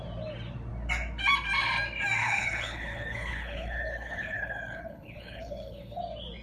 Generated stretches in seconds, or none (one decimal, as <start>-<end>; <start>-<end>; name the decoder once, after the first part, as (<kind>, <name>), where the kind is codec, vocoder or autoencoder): 2.2-6.0 (codec, HILCodec)